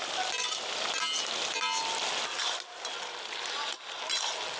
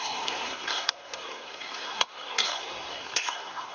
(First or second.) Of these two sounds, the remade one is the second